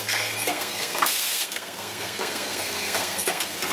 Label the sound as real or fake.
fake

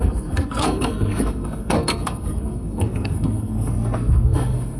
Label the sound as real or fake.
fake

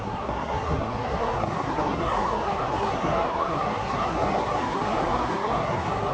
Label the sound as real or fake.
fake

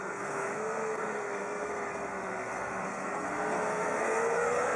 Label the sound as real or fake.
fake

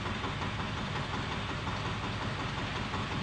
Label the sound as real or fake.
real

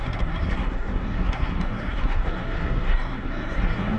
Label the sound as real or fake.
fake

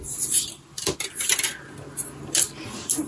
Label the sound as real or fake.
real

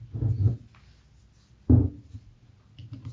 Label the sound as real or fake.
real